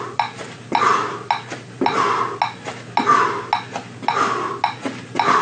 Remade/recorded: recorded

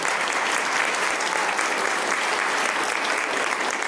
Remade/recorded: recorded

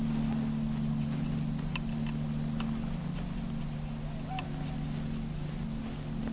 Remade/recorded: recorded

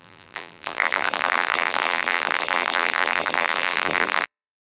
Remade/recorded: remade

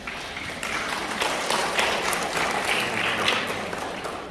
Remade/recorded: remade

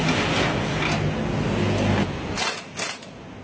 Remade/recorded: recorded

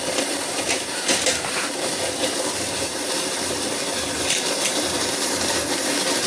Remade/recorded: remade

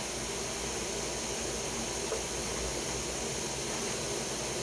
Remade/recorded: recorded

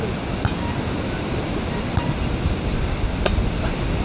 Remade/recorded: recorded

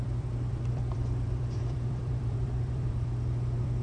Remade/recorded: remade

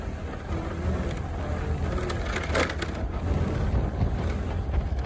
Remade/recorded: recorded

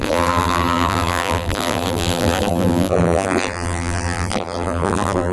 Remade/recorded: remade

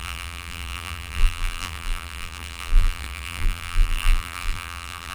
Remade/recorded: remade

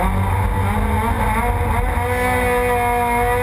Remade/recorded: recorded